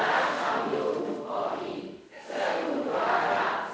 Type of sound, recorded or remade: remade